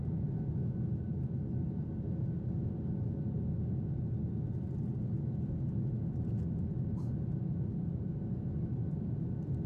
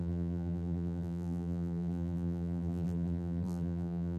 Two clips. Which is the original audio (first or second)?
first